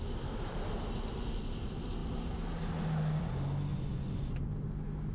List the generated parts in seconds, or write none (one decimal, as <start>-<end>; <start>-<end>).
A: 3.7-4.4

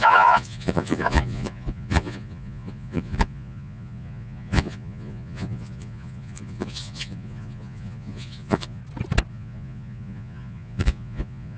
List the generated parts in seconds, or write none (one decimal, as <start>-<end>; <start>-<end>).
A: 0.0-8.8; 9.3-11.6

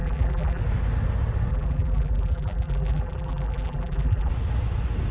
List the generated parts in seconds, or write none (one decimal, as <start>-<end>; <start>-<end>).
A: 0.0-0.6; 1.5-4.3

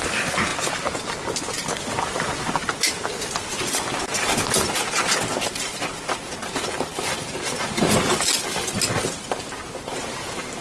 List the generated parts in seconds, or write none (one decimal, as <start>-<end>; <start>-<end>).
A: none

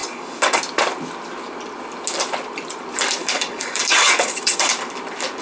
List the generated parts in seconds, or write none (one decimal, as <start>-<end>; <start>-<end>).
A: 0.0-0.6; 3.2-4.7

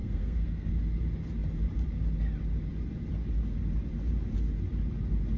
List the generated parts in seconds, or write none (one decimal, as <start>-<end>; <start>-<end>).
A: 0.0-0.7